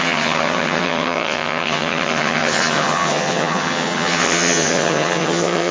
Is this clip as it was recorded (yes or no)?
no